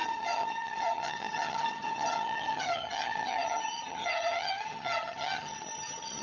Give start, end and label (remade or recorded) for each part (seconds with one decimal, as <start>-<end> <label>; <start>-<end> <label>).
0.0-6.2 remade